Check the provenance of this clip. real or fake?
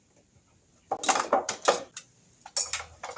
real